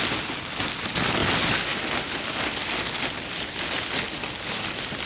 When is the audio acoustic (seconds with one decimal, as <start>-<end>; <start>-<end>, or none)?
0.0-5.1